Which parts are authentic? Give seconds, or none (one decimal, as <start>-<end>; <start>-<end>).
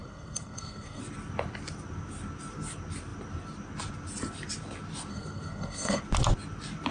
1.0-5.1; 6.0-6.9